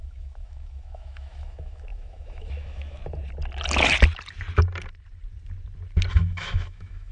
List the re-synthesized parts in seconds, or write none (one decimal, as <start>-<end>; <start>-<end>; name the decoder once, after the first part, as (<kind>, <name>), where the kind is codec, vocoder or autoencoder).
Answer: 0.0-3.0 (autoencoder, DAC-VAE); 6.1-7.1